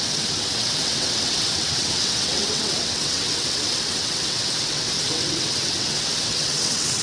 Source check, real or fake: fake